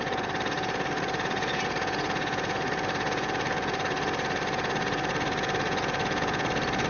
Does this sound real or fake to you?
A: fake